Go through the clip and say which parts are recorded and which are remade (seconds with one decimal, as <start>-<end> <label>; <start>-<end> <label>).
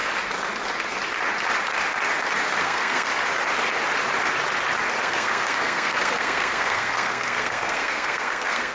0.0-2.6 recorded; 2.6-3.1 remade; 3.1-5.0 recorded; 5.0-8.7 remade